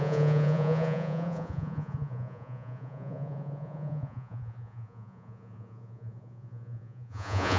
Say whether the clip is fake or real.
fake